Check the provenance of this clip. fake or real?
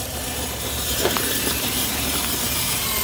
fake